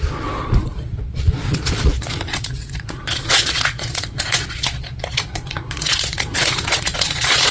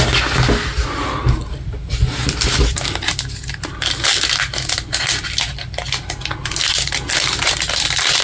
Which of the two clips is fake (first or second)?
first